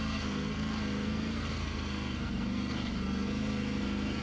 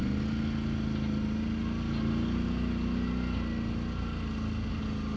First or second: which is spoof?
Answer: first